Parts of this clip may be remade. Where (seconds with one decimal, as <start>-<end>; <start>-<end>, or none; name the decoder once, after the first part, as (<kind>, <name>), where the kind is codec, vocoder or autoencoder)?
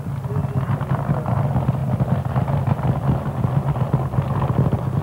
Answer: none